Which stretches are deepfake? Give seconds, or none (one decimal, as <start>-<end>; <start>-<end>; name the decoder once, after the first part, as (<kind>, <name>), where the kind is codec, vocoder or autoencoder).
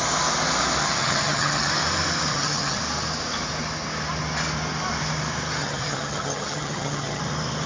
0.8-1.7 (vocoder, HiFi-GAN); 2.3-2.8; 5.6-7.2